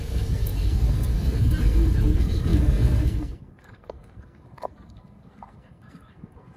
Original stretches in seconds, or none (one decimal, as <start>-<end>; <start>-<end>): none